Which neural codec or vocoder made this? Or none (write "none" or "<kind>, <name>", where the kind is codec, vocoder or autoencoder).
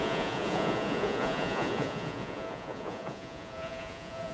vocoder, Vocos